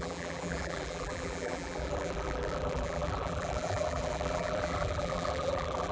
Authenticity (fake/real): fake